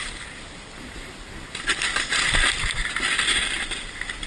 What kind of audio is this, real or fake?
real